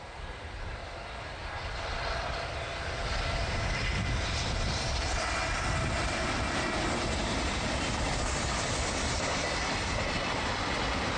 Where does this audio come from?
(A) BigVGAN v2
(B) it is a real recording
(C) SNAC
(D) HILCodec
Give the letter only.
A